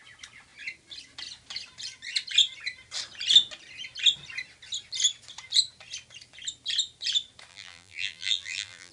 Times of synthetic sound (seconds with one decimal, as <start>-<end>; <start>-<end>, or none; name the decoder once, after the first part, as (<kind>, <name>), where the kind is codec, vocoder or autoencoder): 7.5-8.9 (vocoder, BigVGAN v2)